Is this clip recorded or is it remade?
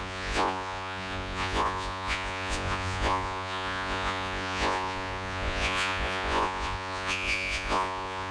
remade